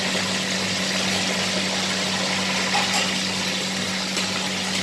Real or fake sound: real